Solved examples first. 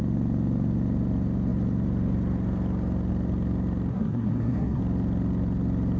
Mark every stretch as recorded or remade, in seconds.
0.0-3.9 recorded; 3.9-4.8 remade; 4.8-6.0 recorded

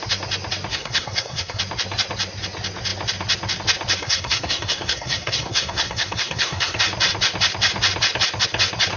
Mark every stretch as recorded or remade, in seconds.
0.0-0.7 recorded; 0.7-1.6 remade; 1.6-4.0 recorded; 4.0-6.8 remade; 6.8-9.0 recorded

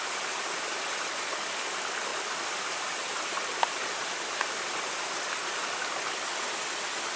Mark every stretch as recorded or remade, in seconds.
0.0-7.2 recorded

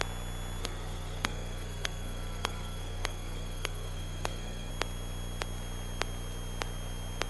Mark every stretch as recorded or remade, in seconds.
0.0-0.6 recorded; 0.6-4.7 remade; 4.7-7.3 recorded